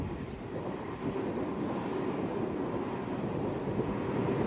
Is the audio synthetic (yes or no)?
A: yes